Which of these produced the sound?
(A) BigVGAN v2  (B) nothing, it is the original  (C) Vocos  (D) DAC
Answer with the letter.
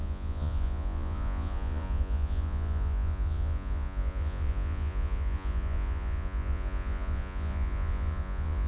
C